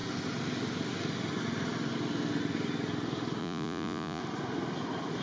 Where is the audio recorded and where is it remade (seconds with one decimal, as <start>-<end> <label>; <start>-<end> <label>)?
0.0-3.4 recorded; 3.4-4.2 remade; 4.2-5.2 recorded